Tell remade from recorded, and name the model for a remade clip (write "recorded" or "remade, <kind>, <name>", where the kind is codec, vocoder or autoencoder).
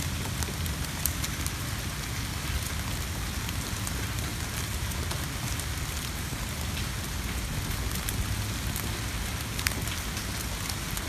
recorded